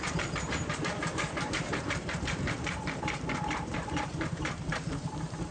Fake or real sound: fake